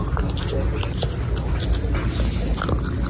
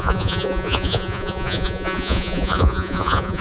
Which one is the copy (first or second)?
second